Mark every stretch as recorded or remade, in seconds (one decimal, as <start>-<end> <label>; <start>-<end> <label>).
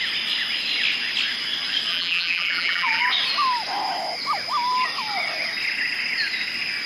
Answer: 0.0-1.9 recorded; 1.9-3.0 remade; 3.0-6.9 recorded